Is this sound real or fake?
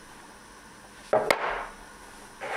real